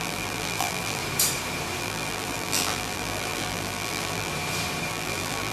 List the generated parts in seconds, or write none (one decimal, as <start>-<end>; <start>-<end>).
0.0-1.0; 1.8-4.3; 4.9-5.5